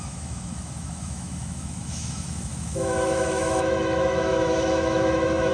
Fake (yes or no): yes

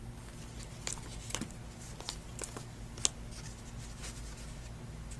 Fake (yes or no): no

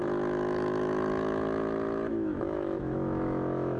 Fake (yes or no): yes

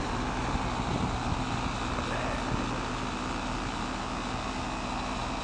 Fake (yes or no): no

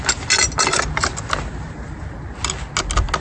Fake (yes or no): no